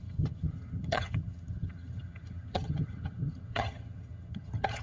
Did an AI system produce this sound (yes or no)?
yes